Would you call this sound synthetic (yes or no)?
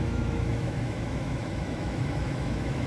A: yes